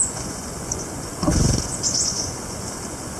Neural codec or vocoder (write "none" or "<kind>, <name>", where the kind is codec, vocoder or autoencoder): vocoder, Vocos